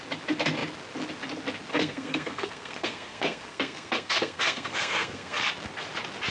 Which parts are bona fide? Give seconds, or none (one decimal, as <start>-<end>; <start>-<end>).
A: 0.0-1.7; 5.5-6.3